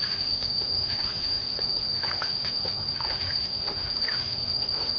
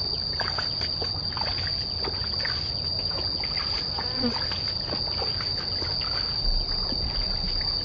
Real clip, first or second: second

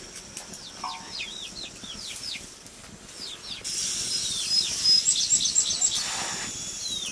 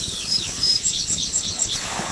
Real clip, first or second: first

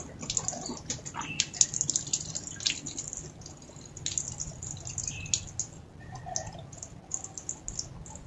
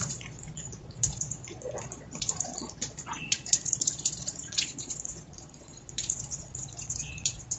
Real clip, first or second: first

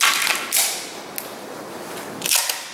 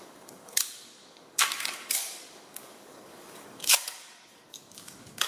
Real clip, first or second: first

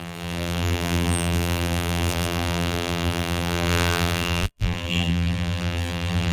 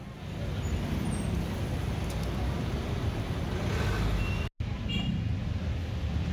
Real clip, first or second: second